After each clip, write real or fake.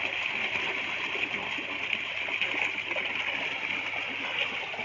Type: real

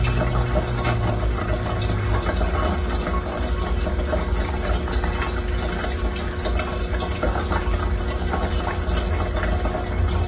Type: real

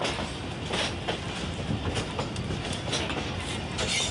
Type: real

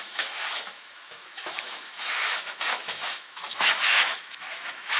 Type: fake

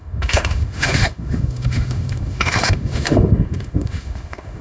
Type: fake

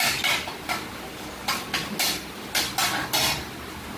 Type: real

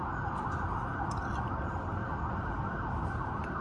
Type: real